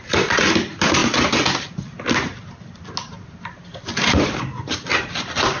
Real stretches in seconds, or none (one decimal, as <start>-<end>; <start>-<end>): 0.0-5.6

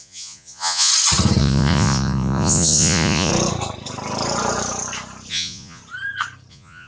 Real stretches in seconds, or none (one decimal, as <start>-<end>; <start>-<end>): 0.9-1.4; 3.3-5.3; 5.8-6.5

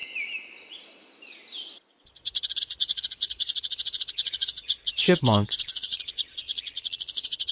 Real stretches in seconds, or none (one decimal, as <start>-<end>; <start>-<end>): 0.0-2.6

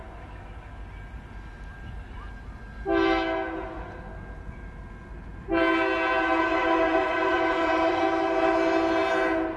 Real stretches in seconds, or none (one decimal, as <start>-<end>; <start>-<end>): 0.0-6.5; 8.0-9.6

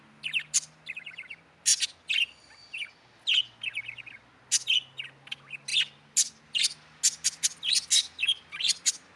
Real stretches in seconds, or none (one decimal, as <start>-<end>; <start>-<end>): 0.0-9.2